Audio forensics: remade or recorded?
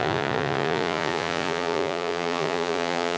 remade